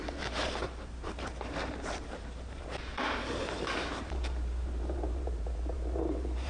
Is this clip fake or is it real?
fake